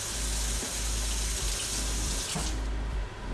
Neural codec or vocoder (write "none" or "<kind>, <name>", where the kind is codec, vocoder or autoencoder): none